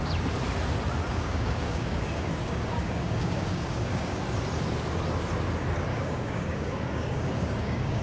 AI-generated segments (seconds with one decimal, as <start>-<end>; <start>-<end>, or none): 1.1-4.2; 5.9-8.0